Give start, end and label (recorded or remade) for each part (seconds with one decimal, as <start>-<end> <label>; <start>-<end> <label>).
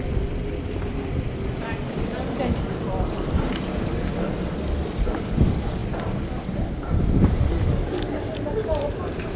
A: 0.0-9.4 recorded